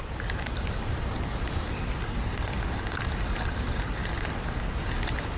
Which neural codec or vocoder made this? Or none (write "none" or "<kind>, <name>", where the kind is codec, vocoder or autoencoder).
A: none